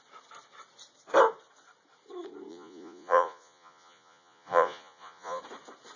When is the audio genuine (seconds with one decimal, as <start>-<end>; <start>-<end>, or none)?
0.0-2.5; 5.4-6.0